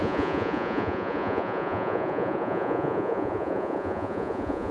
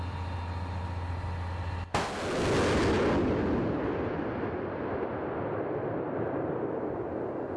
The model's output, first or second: first